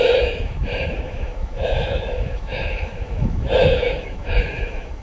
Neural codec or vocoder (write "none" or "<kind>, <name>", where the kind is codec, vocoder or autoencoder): autoencoder, DAC-VAE